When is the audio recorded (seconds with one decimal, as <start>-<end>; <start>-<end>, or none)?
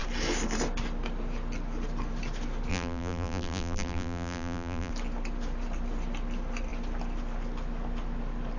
0.0-2.7; 4.9-8.6